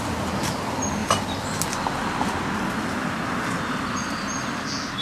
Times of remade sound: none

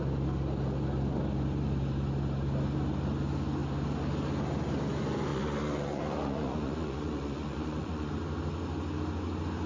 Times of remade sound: 5.3-8.1 (vocoder, Vocos)

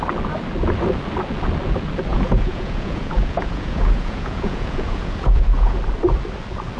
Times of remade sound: 2.1-5.8 (vocoder, Vocos)

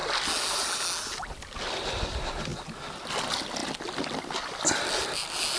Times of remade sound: none

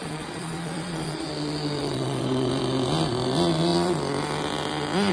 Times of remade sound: 0.0-1.3 (vocoder, Vocos); 1.8-2.5

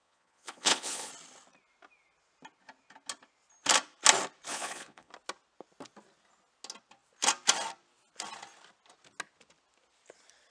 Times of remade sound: 0.0-1.1 (vocoder, Vocos); 4.5-5.1